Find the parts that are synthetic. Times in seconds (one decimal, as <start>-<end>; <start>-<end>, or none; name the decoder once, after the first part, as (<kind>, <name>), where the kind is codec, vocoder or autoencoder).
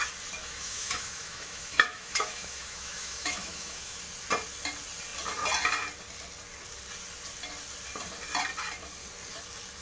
0.4-4.0 (autoencoder, DAC-VAE)